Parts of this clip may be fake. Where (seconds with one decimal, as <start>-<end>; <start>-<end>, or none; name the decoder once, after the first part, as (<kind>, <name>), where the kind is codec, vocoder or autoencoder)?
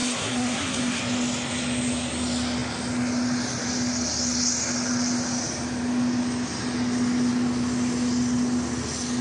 0.0-1.0 (codec, SNAC)